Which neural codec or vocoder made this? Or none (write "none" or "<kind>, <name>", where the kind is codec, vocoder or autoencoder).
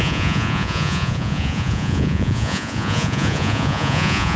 vocoder, Vocos